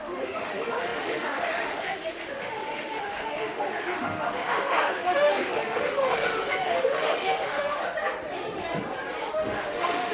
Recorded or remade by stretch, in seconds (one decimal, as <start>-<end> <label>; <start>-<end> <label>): 0.0-7.8 remade; 7.8-9.2 recorded; 9.2-10.1 remade